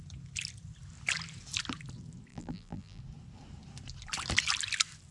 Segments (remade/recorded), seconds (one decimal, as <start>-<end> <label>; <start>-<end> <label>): 0.0-2.3 recorded; 2.3-3.0 remade; 3.0-5.1 recorded